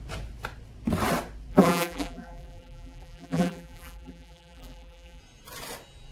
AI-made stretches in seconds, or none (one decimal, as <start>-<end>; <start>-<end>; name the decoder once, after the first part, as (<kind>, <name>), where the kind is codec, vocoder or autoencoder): 1.5-5.2 (vocoder, BigVGAN v2)